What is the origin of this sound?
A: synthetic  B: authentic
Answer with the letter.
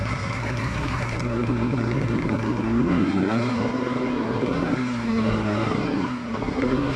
A